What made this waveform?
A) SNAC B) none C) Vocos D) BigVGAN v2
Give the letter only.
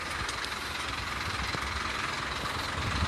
B